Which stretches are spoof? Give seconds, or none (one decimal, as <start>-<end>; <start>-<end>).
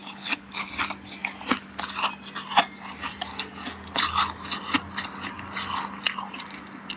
0.0-0.7